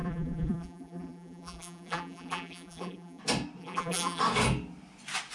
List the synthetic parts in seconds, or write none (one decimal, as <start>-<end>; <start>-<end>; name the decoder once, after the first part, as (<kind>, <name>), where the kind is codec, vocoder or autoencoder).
0.0-3.2 (vocoder, BigVGAN v2); 3.6-4.2